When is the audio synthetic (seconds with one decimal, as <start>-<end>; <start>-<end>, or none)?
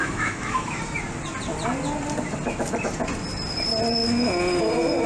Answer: 0.0-0.8